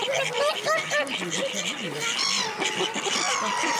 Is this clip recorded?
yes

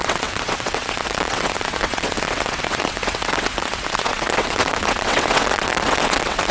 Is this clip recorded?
no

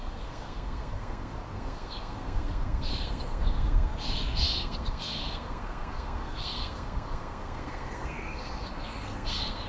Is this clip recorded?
no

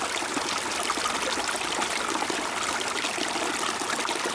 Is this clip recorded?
yes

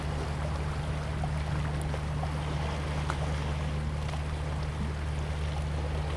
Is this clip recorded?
yes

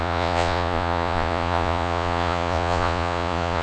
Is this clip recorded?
no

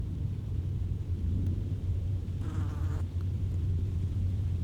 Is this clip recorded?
no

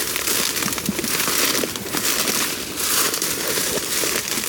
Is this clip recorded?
yes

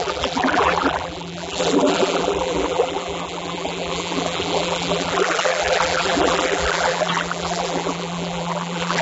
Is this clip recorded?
no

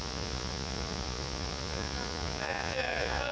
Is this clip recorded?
no